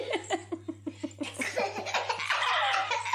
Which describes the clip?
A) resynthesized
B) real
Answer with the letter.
B